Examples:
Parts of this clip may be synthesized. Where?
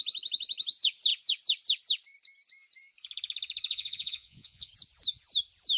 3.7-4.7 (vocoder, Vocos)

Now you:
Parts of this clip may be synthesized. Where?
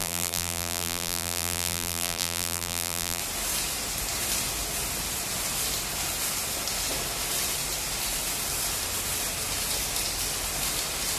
0.0-3.2 (vocoder, BigVGAN v2)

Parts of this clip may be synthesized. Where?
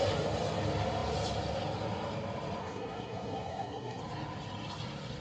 2.6-4.0 (codec, SNAC)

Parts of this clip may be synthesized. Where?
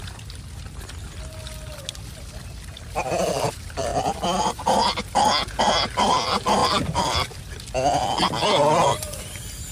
6.6-7.5 (vocoder, BigVGAN v2)